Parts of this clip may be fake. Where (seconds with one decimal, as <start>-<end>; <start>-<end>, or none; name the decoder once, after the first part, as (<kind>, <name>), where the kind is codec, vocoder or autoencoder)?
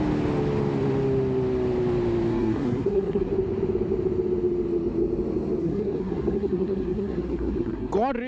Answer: 2.3-3.3 (codec, SNAC); 5.6-7.9